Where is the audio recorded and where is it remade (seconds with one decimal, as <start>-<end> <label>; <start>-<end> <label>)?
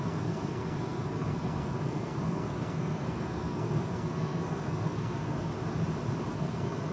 0.0-5.5 remade; 5.5-6.3 recorded; 6.3-6.9 remade